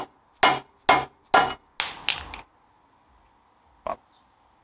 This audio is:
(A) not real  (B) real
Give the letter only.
B